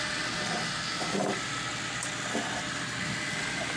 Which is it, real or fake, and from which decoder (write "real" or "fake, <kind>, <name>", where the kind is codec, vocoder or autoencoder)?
real